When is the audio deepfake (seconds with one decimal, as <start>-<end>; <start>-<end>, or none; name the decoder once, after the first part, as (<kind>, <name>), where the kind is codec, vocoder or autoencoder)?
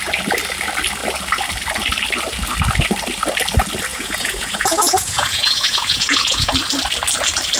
3.9-6.5 (vocoder, Vocos)